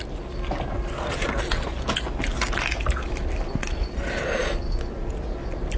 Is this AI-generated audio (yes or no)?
no